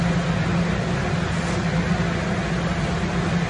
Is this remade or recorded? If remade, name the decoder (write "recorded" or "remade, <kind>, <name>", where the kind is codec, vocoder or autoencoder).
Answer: recorded